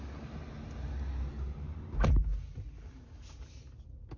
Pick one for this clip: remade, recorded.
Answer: recorded